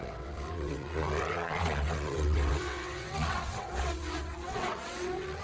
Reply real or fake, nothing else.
fake